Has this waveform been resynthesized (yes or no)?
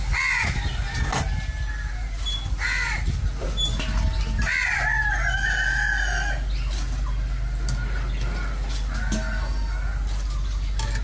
no